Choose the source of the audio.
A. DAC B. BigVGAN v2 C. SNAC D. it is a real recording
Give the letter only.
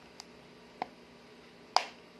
D